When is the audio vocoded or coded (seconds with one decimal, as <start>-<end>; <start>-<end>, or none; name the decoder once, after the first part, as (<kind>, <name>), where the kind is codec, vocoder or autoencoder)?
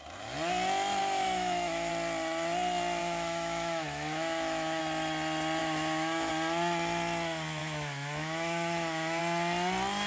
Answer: 1.0-1.9 (autoencoder, DAC-VAE); 3.0-4.8; 5.6-6.3; 7.6-9.2